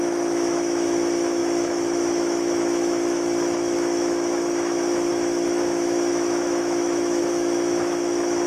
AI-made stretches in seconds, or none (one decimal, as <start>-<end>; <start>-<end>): 0.0-8.5

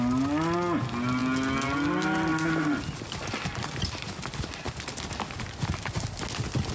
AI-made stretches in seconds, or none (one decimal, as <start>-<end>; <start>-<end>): none

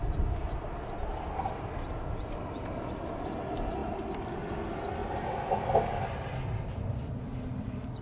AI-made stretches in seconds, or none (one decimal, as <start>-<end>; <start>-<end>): none

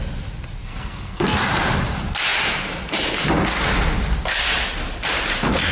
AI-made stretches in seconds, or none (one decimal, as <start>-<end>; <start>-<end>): 0.6-1.4

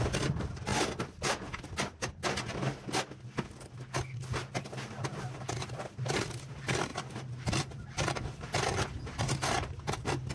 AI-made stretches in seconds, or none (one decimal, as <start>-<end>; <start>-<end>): 0.0-0.7; 5.5-8.7; 9.5-10.3